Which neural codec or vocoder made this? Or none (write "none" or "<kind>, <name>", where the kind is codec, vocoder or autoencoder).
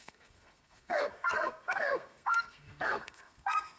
codec, SNAC